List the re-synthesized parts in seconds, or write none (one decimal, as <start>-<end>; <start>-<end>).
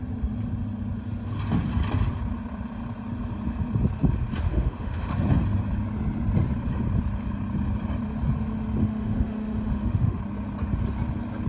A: 4.5-5.1; 8.8-10.2